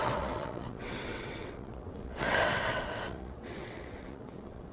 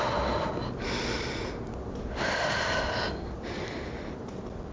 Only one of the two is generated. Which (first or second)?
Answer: first